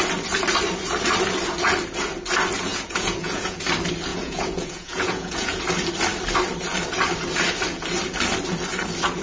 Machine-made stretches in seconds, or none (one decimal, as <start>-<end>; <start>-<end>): 2.7-3.6; 4.1-5.6